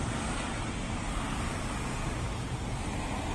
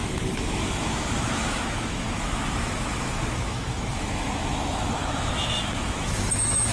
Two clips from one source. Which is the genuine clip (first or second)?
first